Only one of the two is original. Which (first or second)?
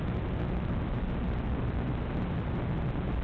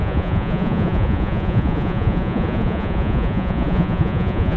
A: first